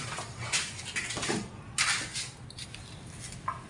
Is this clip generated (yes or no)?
no